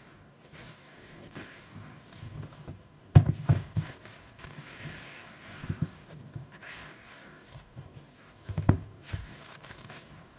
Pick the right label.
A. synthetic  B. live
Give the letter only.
A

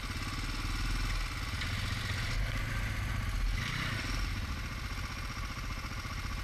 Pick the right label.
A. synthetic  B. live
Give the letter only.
B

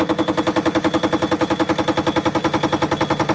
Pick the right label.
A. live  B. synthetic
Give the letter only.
A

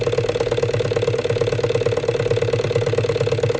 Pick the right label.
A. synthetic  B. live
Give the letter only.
B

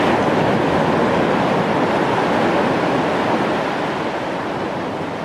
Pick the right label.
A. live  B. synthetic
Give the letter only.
A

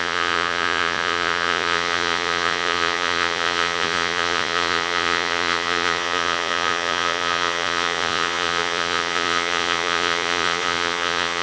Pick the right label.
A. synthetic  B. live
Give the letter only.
A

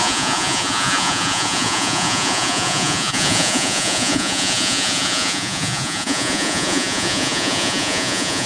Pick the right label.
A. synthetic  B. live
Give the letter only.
A